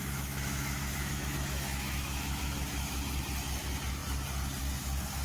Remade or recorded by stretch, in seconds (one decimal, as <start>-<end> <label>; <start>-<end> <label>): 0.0-3.0 remade; 3.0-5.2 recorded